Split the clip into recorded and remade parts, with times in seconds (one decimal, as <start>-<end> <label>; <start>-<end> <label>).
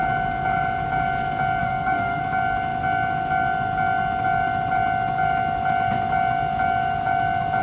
0.0-1.6 recorded; 1.6-2.2 remade; 2.2-7.6 recorded